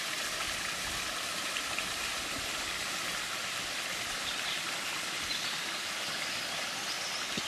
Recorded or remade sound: recorded